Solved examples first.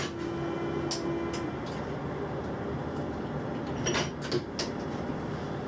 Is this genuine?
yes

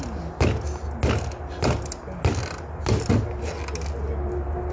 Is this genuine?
yes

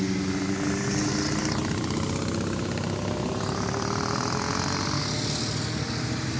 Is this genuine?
yes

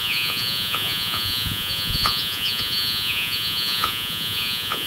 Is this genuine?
no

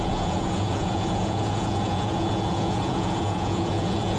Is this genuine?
no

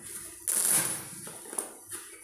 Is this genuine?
yes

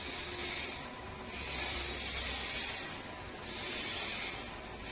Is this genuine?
yes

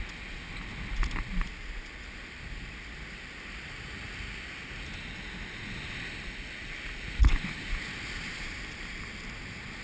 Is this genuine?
yes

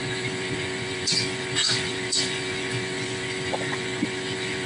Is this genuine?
no